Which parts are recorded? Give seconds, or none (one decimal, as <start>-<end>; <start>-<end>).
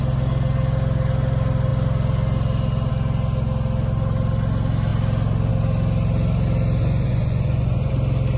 0.0-6.8; 7.9-8.4